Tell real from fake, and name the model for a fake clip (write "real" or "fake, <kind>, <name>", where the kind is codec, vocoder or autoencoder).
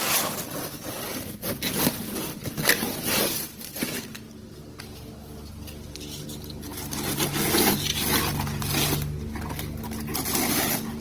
real